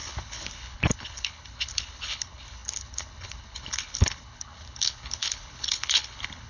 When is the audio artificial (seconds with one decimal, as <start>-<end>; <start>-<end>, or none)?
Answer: 0.0-6.5